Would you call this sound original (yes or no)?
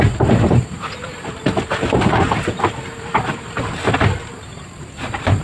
no